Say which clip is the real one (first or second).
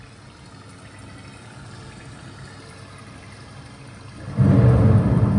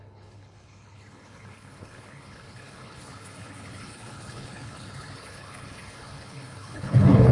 first